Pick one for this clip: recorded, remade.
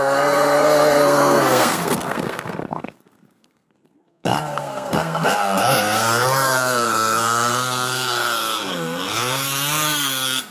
remade